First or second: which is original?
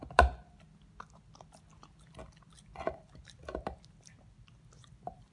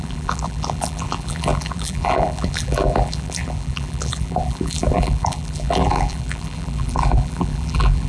first